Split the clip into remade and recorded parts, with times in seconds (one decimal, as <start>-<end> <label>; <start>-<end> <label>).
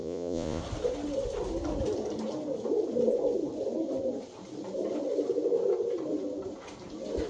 0.0-0.6 remade; 0.6-7.3 recorded